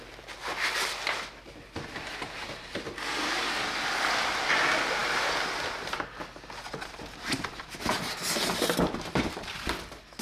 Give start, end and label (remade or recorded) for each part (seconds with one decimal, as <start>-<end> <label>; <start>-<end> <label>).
0.0-10.2 recorded